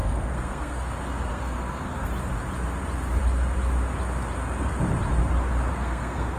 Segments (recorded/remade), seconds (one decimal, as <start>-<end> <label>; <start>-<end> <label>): 0.0-0.9 remade; 0.9-1.3 recorded; 1.3-2.1 remade; 2.1-5.7 recorded; 5.7-6.4 remade